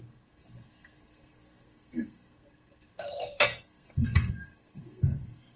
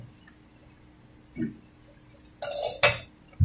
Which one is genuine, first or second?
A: second